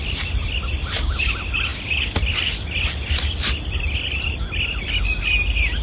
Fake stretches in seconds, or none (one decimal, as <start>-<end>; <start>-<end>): none